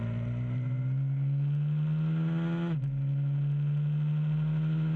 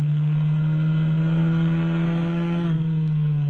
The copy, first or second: second